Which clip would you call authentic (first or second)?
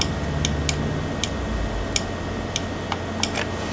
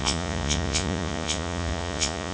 first